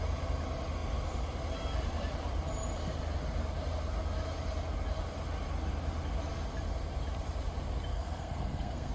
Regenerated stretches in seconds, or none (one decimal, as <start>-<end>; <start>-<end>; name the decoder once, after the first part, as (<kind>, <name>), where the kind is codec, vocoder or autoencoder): 7.9-8.9 (codec, SNAC)